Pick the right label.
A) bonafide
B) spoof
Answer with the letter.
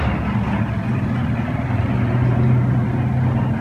A